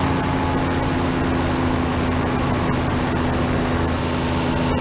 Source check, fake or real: real